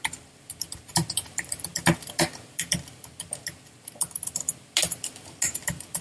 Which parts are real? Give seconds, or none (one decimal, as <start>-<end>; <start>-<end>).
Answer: 0.0-6.0